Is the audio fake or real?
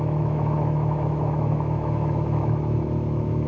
fake